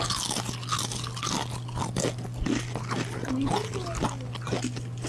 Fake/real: real